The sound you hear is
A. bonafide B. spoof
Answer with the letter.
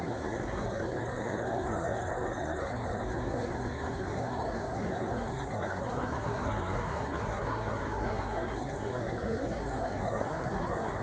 B